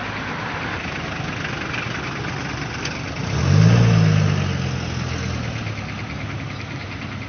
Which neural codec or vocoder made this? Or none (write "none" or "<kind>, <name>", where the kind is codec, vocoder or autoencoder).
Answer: none